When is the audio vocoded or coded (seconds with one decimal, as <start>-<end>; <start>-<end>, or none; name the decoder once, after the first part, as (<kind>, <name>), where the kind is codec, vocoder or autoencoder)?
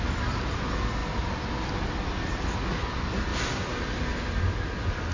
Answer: none